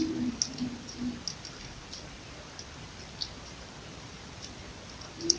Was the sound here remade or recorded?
recorded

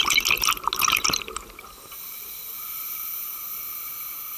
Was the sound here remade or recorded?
recorded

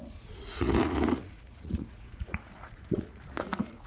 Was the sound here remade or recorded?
remade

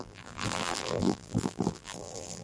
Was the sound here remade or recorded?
remade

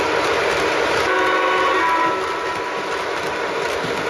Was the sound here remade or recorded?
recorded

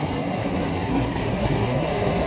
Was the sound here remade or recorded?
remade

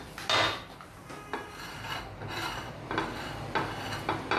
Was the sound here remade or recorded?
recorded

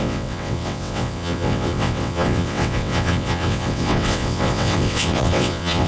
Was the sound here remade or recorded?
remade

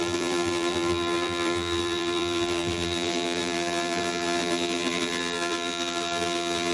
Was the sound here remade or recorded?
remade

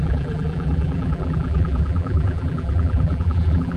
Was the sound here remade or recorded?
remade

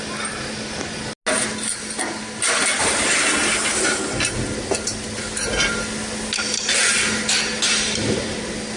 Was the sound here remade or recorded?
recorded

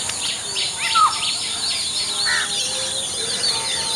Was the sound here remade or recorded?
recorded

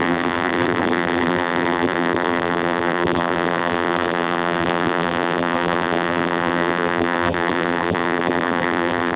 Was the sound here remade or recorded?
remade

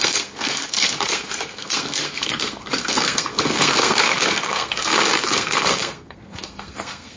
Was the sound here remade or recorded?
remade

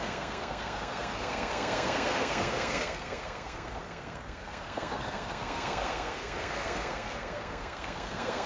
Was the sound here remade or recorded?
remade